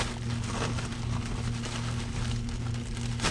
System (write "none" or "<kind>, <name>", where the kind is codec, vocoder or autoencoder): none